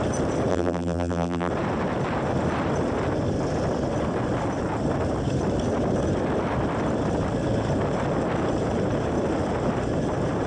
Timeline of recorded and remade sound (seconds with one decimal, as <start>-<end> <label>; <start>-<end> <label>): 0.0-0.5 recorded; 0.5-1.5 remade; 1.5-10.5 recorded